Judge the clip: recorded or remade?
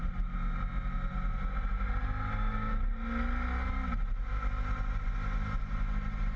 recorded